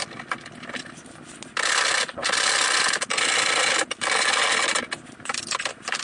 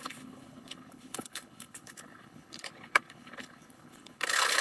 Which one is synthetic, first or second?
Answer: second